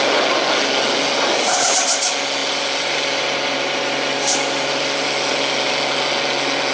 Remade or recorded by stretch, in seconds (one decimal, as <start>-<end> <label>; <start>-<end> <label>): 0.0-2.4 recorded; 2.4-5.3 remade; 5.3-6.7 recorded